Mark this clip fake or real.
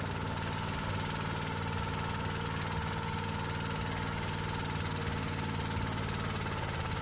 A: real